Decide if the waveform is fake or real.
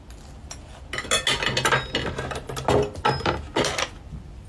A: real